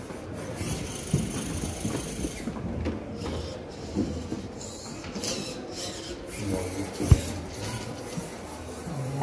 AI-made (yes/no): no